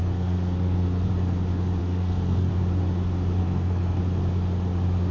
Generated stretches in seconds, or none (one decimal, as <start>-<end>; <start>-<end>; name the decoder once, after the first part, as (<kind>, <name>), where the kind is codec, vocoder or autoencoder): 0.0-1.1 (codec, SNAC); 1.8-2.5; 3.4-4.0